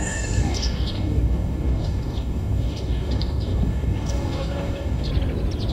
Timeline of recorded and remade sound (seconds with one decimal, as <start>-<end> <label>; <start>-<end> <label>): 0.0-5.1 remade; 5.1-5.7 recorded